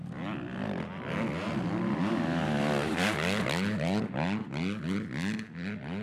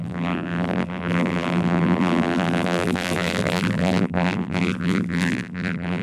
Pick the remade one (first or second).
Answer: second